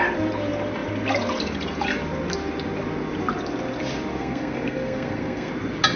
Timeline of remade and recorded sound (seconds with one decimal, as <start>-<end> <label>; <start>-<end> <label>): 0.0-4.1 recorded; 4.1-5.5 remade; 5.5-6.0 recorded

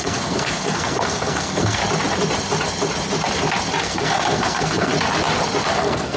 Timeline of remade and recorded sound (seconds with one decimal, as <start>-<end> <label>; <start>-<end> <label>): 0.0-1.8 remade; 1.8-3.8 recorded; 3.8-4.9 remade; 4.9-5.7 recorded; 5.7-6.2 remade

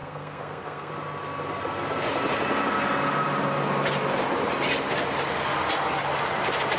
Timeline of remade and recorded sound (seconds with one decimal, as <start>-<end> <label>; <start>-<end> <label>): 0.0-0.9 remade; 0.9-6.8 recorded

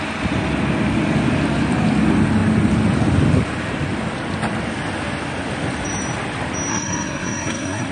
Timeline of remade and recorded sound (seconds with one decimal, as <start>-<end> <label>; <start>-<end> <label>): 0.0-6.7 recorded; 6.7-7.9 remade